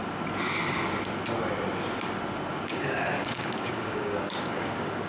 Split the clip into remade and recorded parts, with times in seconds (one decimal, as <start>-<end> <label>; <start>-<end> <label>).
0.0-2.5 recorded; 2.5-5.1 remade